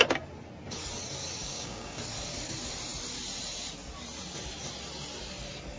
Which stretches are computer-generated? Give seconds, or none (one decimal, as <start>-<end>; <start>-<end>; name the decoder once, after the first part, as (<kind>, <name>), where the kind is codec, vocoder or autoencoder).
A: 1.4-2.0 (codec, DAC)